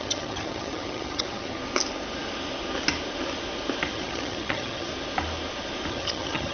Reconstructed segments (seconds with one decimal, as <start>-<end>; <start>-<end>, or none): 0.0-1.6; 3.9-4.9; 5.9-6.5